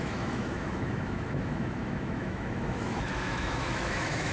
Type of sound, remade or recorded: remade